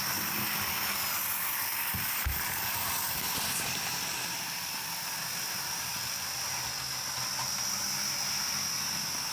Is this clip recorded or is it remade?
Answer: recorded